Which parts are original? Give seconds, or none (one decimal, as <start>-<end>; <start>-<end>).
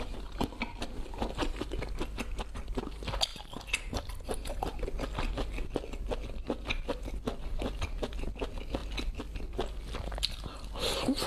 0.0-11.3